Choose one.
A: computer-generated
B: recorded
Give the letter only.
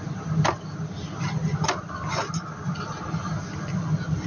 B